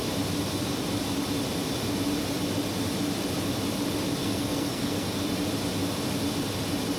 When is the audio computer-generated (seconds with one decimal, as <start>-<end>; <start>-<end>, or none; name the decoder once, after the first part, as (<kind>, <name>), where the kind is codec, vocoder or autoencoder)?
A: 4.2-5.1 (codec, SNAC)